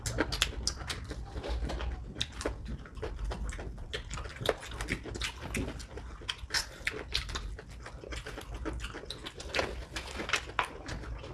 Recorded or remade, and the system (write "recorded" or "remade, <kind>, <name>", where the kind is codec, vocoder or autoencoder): recorded